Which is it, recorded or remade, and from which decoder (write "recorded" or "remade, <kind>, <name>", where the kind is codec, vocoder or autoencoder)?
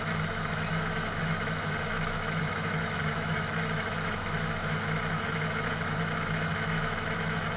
remade, autoencoder, DAC-VAE